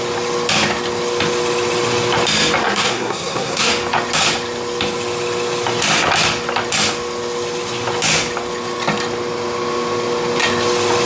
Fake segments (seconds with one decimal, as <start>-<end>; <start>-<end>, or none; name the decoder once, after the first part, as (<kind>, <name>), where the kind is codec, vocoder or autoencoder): 2.6-3.7 (codec, SNAC)